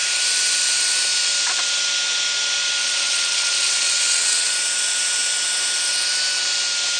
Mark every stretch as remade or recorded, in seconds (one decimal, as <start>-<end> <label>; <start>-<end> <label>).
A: 0.0-2.8 recorded; 2.8-4.5 remade; 4.5-7.0 recorded